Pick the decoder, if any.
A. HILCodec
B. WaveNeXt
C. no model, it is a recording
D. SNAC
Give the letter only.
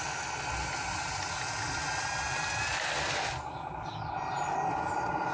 C